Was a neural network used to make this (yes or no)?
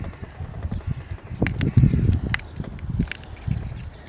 no